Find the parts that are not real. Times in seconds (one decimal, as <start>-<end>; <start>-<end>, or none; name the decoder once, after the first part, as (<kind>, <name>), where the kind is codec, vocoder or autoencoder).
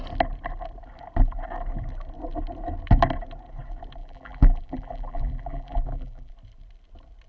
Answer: 4.0-6.3 (vocoder, BigVGAN v2)